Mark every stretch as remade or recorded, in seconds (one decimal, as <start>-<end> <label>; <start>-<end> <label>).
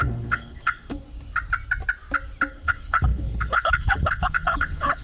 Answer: 0.0-1.0 remade; 1.0-2.5 recorded; 2.5-5.0 remade